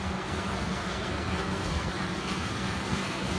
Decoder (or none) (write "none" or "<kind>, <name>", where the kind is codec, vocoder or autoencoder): codec, SNAC